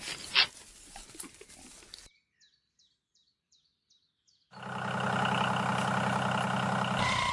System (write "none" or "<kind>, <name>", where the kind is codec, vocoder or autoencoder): none